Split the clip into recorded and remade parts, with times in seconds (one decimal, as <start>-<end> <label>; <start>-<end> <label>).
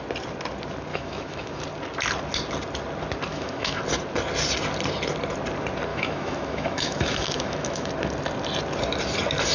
0.0-0.9 recorded; 0.9-1.6 remade; 1.6-3.3 recorded; 3.3-3.8 remade; 3.8-5.9 recorded; 5.9-7.9 remade; 7.9-9.5 recorded